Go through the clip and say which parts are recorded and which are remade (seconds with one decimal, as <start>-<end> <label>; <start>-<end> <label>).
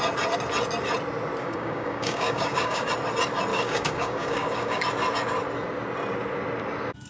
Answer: 0.0-1.4 recorded; 1.4-2.9 remade; 2.9-3.5 recorded; 3.5-4.8 remade; 4.8-7.1 recorded